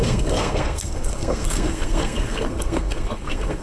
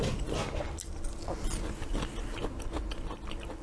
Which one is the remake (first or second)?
first